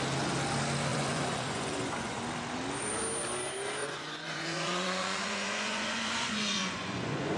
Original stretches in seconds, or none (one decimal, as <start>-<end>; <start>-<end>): 0.0-0.9; 2.2-3.8